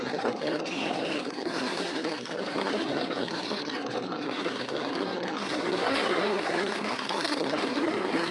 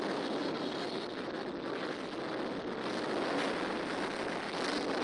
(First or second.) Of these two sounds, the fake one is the first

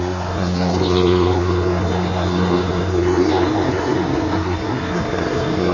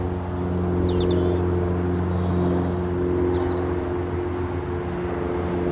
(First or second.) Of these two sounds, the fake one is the first